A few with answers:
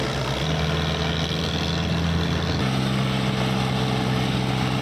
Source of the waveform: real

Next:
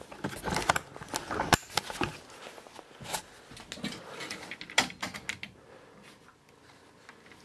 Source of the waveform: real